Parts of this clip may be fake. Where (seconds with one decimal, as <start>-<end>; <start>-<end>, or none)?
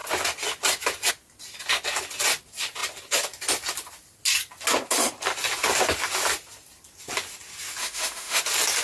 7.8-8.4